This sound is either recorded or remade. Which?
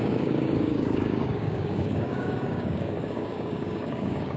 remade